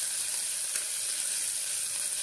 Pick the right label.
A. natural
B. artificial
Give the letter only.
A